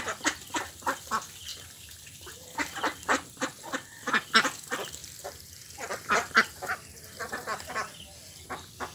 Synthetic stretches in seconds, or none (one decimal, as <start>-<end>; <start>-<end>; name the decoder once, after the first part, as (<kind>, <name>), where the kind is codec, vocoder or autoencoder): 5.0-7.2 (vocoder, BigVGAN v2)